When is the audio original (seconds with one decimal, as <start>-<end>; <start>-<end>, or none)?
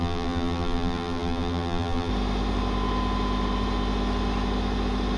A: 2.1-5.2